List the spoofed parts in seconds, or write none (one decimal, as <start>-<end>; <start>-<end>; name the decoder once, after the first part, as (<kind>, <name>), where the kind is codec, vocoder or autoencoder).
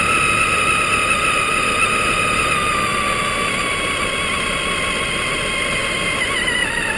none